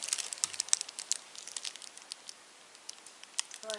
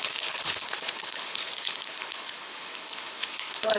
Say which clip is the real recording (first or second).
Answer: first